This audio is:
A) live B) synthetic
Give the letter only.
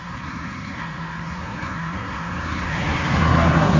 B